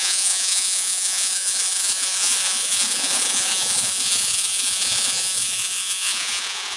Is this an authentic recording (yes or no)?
no